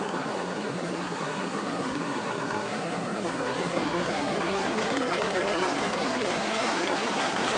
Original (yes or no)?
no